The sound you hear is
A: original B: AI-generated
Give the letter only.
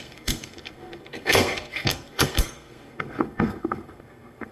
B